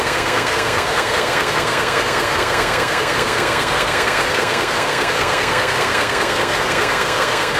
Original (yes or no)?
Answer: no